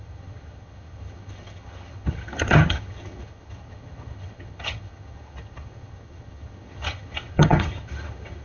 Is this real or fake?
fake